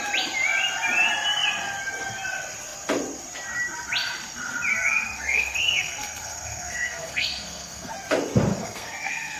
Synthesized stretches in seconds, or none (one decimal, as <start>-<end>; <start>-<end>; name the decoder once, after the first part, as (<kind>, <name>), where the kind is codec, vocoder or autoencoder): 4.7-7.9 (codec, SNAC); 8.5-9.4